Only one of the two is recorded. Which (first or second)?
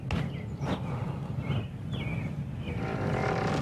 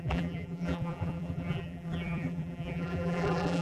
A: first